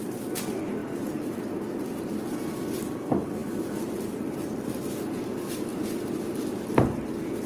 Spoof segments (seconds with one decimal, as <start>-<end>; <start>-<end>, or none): none